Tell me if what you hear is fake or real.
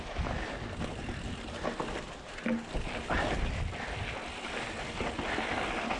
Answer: real